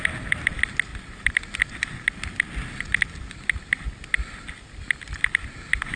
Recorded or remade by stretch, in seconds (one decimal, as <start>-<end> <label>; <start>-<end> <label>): 0.0-6.0 recorded